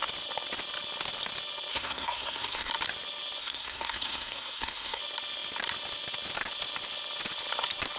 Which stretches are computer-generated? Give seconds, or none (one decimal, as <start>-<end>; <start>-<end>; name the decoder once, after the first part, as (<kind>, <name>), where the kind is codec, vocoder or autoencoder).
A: 1.7-2.7 (codec, SNAC); 3.4-5.0